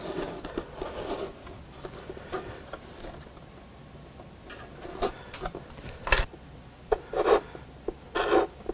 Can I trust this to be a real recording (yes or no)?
yes